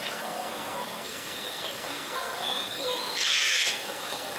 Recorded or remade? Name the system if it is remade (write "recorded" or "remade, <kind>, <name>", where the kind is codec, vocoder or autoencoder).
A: remade, codec, SNAC